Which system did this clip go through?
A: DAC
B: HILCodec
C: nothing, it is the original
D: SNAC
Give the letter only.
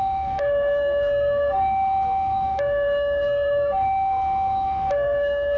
D